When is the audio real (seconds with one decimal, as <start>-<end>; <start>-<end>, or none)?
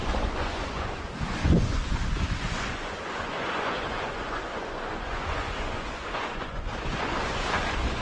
none